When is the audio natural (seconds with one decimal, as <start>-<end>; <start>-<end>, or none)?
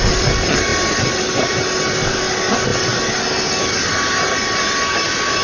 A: 0.0-5.4